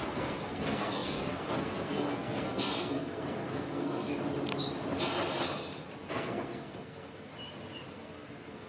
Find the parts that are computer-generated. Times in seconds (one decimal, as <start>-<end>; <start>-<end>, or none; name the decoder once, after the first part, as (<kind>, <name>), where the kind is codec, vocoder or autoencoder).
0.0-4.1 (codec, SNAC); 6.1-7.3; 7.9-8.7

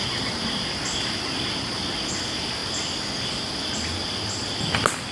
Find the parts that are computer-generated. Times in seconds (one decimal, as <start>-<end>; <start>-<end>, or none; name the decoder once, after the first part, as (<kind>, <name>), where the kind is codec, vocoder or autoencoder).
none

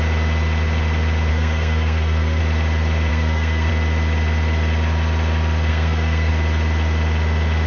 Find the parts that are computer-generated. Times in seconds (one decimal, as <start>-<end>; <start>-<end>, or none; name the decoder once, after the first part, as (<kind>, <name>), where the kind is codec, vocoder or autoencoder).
1.3-2.4 (codec, SNAC); 3.1-3.7; 5.7-6.3